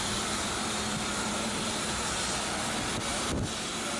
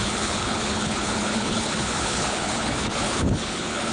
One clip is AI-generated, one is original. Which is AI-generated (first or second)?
second